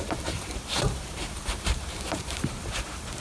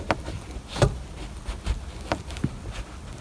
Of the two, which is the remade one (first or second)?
first